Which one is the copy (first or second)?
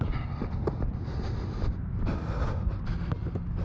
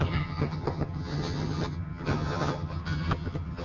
second